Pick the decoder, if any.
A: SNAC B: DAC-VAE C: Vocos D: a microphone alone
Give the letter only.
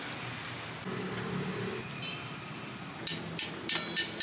D